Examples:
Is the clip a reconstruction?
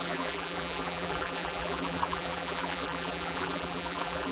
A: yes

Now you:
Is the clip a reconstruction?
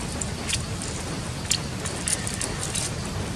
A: no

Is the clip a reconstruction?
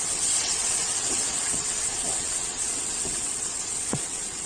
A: yes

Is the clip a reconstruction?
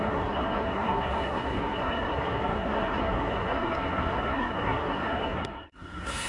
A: yes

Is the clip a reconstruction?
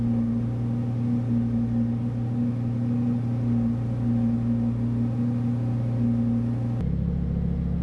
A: no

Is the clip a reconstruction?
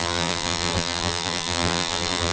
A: yes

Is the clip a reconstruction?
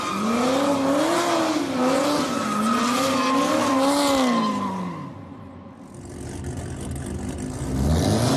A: no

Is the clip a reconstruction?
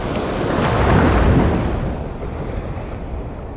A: no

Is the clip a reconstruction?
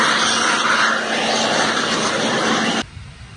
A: no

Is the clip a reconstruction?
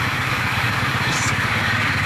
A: yes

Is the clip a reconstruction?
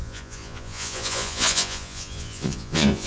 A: yes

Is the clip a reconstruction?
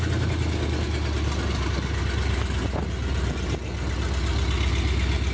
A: no